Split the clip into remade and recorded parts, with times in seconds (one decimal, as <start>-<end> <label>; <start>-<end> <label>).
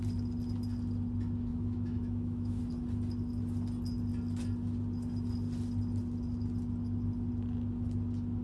0.0-1.5 recorded; 1.5-2.6 remade; 2.6-8.4 recorded